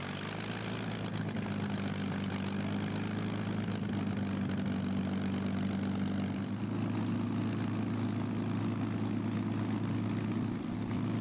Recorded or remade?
recorded